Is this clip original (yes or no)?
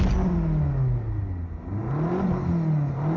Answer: yes